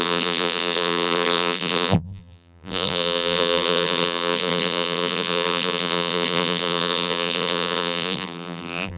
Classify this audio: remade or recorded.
remade